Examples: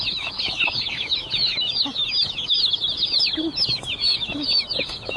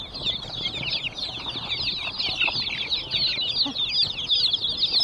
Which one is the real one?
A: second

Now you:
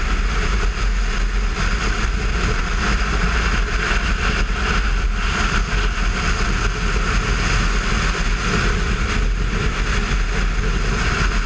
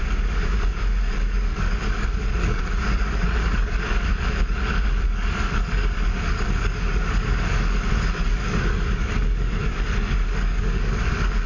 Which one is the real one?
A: first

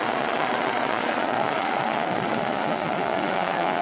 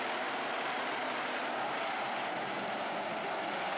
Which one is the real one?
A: second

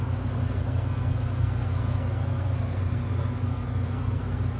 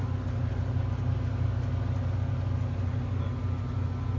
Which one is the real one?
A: second